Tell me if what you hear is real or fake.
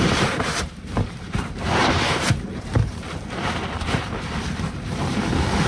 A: fake